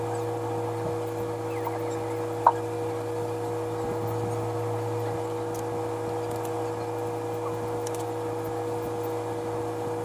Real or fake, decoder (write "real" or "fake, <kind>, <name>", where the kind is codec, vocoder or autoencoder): real